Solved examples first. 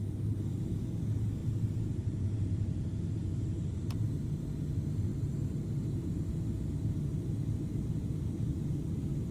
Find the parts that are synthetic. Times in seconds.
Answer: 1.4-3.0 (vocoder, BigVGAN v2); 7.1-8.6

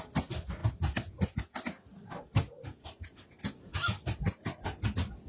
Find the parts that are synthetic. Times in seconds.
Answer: none